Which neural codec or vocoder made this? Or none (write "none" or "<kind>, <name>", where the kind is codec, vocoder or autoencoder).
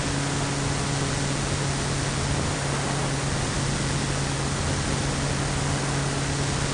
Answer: none